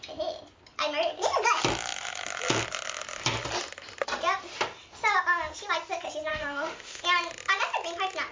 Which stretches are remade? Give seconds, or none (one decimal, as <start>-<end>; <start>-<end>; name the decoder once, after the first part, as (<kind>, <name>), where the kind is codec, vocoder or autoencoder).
6.3-7.0 (autoencoder, DAC-VAE)

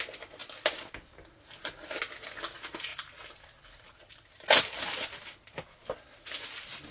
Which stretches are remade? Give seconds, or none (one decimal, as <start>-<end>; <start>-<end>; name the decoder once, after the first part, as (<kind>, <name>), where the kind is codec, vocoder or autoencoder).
none

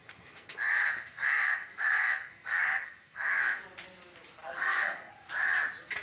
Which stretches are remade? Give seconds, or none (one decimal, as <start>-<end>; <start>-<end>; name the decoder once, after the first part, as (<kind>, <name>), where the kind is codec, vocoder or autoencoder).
0.0-3.6 (codec, SNAC); 4.4-5.1

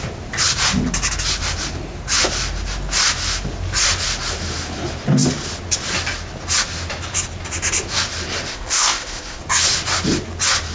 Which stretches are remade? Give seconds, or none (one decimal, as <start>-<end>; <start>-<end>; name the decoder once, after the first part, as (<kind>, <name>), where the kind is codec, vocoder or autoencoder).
8.5-9.4 (codec, ZipCodec)

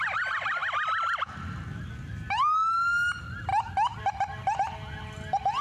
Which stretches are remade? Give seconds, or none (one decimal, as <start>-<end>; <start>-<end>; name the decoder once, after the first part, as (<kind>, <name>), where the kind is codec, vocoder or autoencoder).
none

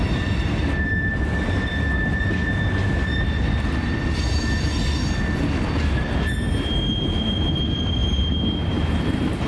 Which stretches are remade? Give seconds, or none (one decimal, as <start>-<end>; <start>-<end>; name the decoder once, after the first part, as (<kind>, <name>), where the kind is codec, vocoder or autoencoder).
8.0-9.5 (vocoder, BigVGAN v2)

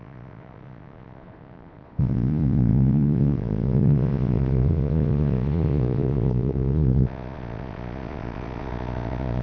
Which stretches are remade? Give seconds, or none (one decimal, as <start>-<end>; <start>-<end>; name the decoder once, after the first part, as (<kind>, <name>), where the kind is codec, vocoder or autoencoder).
0.0-9.4 (vocoder, Vocos)

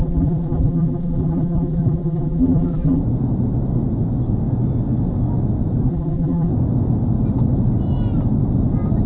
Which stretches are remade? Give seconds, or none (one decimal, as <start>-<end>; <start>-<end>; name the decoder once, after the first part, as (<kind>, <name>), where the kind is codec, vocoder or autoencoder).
0.0-3.0 (vocoder, BigVGAN v2); 5.9-6.5